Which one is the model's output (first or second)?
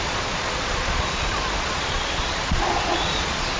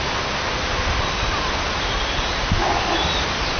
first